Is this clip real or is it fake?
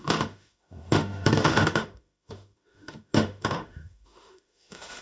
fake